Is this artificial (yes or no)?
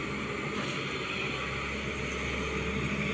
no